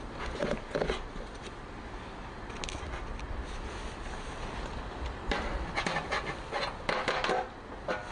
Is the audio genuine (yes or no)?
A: yes